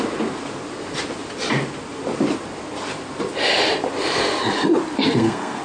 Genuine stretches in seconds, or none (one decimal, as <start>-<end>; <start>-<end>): 0.0-5.0